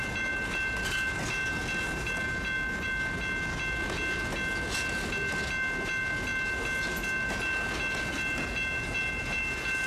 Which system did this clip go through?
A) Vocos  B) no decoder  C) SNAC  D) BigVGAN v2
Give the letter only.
B